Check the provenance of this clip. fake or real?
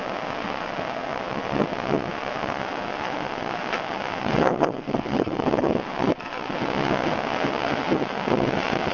fake